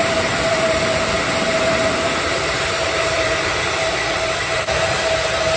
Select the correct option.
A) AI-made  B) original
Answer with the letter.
A